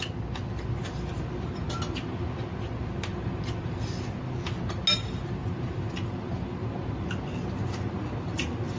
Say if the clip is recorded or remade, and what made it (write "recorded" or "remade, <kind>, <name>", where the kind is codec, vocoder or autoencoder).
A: recorded